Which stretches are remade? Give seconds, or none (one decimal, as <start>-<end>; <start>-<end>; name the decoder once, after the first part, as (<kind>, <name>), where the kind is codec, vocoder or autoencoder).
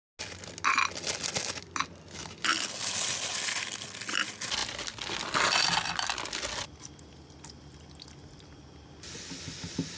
none